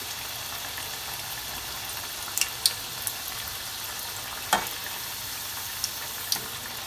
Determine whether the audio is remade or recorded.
recorded